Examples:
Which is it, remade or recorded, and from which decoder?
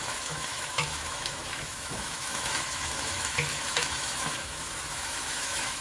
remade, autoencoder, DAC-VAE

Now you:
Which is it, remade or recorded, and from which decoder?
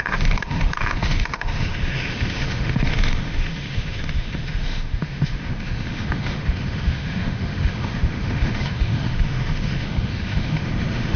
remade, autoencoder, DAC-VAE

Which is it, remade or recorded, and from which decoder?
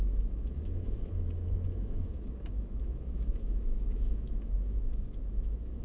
remade, autoencoder, DAC-VAE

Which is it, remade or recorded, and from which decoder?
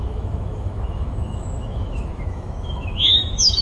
remade, autoencoder, DAC-VAE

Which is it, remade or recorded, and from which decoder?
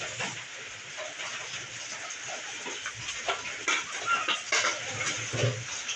recorded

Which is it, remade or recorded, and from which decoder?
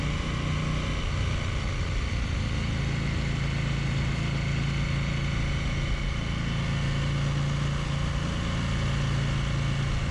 recorded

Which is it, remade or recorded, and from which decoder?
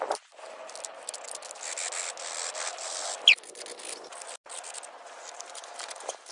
recorded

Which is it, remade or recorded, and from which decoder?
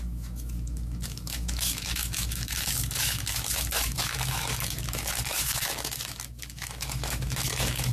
remade, autoencoder, DAC-VAE